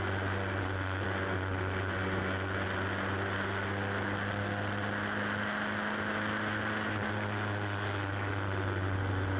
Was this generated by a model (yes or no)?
no